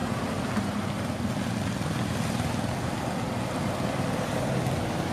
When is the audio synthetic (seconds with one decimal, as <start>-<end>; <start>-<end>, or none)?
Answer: none